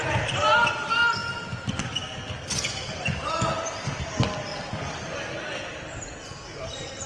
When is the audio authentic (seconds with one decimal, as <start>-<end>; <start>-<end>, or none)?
0.0-1.2; 3.2-4.5; 5.0-7.1